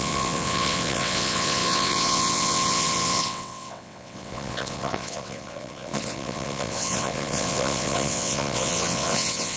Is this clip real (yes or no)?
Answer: no